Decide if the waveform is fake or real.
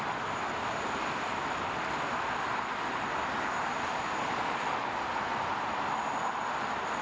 real